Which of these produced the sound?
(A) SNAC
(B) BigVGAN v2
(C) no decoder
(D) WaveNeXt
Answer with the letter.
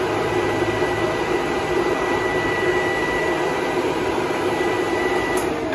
B